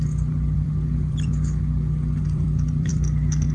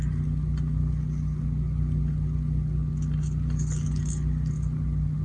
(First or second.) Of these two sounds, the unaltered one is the second